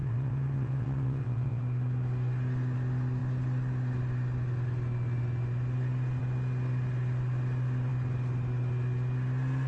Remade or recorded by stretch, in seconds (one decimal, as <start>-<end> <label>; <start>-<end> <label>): 0.0-1.6 remade; 1.6-9.7 recorded